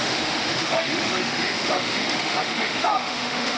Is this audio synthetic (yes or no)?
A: yes